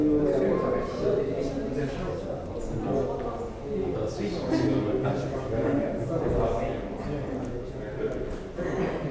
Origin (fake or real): real